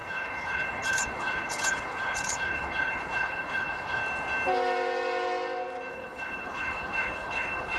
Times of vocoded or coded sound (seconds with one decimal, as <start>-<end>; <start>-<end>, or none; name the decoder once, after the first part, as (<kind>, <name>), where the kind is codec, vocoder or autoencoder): 0.0-4.0 (codec, HILCodec); 5.9-7.8